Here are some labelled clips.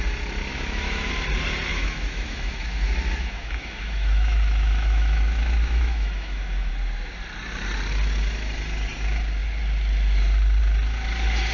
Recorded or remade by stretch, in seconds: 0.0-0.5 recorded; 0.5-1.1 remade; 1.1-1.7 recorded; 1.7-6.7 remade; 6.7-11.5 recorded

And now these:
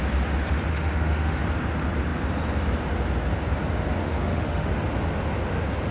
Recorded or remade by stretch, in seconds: 0.0-0.7 recorded; 0.7-1.4 remade; 1.4-4.0 recorded; 4.0-4.7 remade; 4.7-5.9 recorded

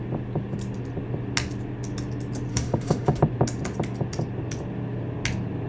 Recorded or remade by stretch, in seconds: 0.0-2.5 recorded; 2.5-3.2 remade; 3.2-5.7 recorded

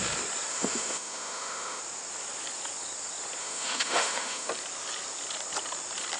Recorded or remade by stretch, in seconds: 0.0-0.5 recorded; 0.5-1.8 remade; 1.8-3.4 recorded; 3.4-4.5 remade; 4.5-6.2 recorded

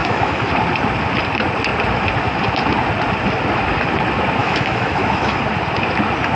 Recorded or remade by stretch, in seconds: 0.0-0.5 remade; 0.5-4.4 recorded; 4.4-5.4 remade; 5.4-6.3 recorded

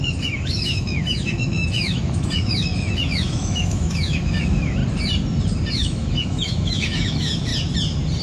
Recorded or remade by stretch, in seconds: 0.0-4.8 remade; 4.8-5.7 recorded; 5.7-7.5 remade; 7.5-8.2 recorded

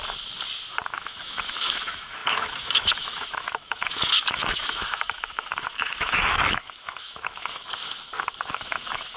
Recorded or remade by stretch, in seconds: 0.0-0.9 recorded; 0.9-7.6 remade; 7.6-8.4 recorded; 8.4-9.2 remade